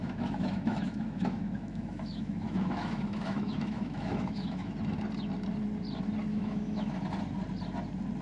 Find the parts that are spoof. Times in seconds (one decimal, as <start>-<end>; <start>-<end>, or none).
0.0-4.7; 6.3-6.9